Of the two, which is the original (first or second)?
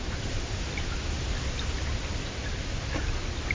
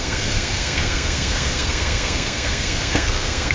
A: first